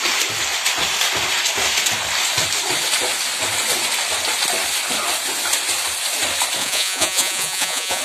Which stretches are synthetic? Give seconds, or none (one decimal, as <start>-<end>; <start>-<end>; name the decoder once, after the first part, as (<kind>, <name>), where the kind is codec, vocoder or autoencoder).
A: 6.6-8.0 (vocoder, Vocos)